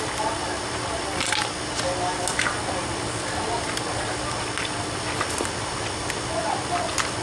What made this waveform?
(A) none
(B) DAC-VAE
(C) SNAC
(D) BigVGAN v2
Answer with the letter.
A